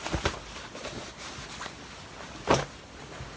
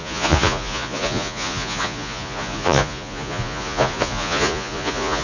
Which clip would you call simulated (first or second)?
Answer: second